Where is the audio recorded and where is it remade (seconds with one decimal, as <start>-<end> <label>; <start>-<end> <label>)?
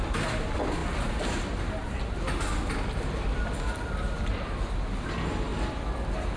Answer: 0.0-5.5 recorded; 5.5-6.0 remade; 6.0-6.4 recorded